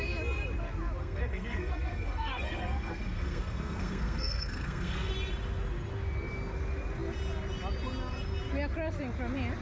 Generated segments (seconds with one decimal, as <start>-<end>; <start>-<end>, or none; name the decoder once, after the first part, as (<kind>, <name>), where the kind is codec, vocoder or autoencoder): 1.0-5.1 (codec, SNAC)